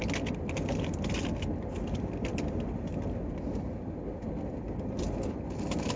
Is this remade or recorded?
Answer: recorded